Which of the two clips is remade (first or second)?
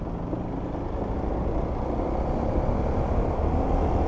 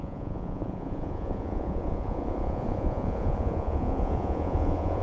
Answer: second